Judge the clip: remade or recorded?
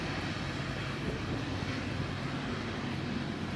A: recorded